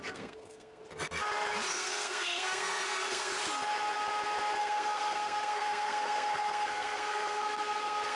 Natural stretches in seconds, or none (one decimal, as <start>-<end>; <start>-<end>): 0.8-1.7; 3.3-4.6